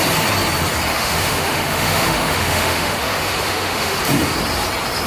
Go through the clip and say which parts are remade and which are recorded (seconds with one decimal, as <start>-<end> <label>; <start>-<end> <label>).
0.0-0.9 recorded; 0.9-4.0 remade; 4.0-5.1 recorded

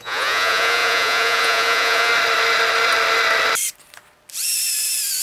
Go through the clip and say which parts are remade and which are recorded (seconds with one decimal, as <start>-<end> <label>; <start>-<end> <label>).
0.0-2.1 remade; 2.1-5.2 recorded

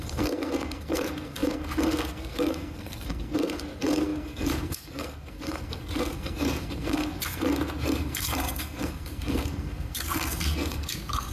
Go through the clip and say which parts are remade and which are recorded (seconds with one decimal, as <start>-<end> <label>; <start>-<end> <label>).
0.0-11.3 remade